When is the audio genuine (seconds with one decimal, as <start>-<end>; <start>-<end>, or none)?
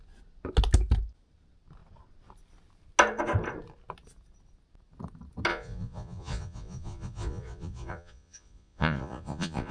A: 0.0-5.5